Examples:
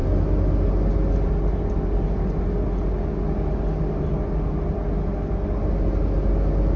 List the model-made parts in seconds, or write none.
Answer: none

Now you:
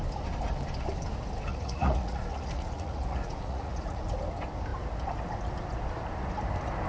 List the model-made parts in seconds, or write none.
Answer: 1.5-4.0

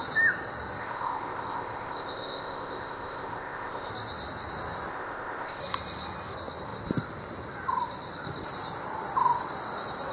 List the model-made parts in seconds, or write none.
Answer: 0.8-3.9; 4.9-5.6

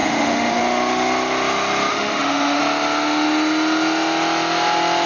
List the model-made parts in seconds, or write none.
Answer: 0.0-0.6; 1.9-2.6

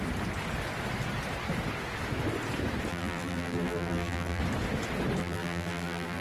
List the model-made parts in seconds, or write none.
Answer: 2.9-4.4; 5.2-6.2

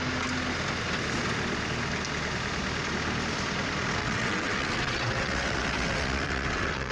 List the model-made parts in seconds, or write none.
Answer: 4.0-6.9

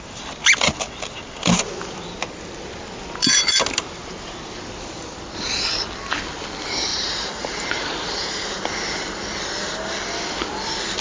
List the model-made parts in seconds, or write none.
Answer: 6.9-8.6

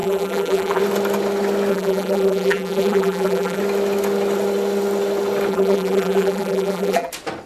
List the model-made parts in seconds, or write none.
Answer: 0.0-0.8; 1.7-3.6; 5.5-7.1